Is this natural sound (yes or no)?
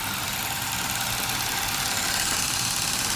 yes